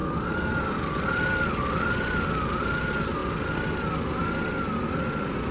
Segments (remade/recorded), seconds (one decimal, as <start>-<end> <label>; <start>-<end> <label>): 0.0-5.5 recorded